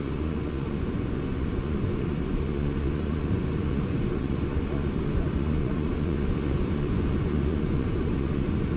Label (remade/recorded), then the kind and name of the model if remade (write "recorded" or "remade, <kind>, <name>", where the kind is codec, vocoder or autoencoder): remade, vocoder, Vocos